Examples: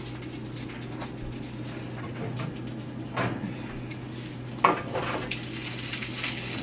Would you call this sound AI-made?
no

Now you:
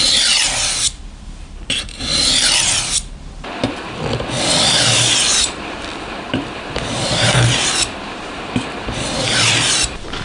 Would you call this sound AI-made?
yes